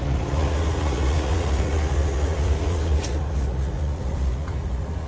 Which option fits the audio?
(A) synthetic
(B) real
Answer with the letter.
A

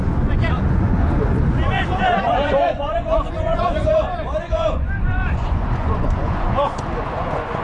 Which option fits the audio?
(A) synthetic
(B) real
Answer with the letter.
A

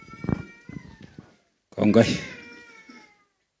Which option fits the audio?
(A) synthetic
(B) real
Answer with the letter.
B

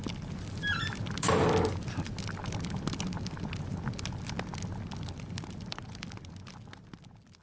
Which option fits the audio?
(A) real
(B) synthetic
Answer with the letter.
A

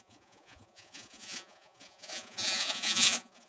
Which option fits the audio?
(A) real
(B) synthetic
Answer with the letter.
B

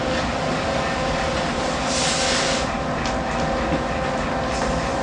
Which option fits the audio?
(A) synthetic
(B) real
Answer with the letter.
B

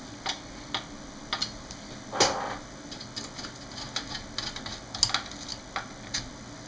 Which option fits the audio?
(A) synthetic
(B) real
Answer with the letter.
B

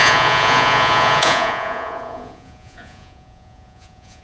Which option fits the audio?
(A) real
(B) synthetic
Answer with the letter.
B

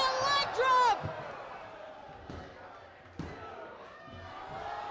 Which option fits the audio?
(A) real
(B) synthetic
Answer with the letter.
A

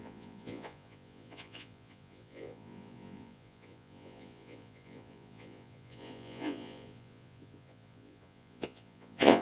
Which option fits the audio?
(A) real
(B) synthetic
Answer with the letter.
B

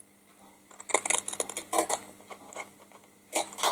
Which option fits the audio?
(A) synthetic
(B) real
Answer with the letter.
B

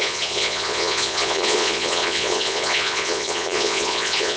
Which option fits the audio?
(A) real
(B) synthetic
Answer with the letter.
B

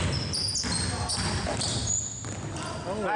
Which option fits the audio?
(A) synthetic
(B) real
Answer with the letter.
B